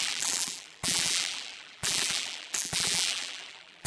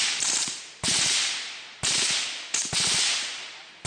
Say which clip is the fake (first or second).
first